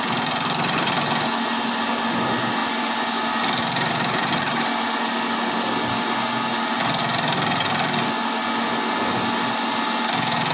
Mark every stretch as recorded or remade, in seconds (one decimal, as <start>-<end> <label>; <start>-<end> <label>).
0.0-10.5 recorded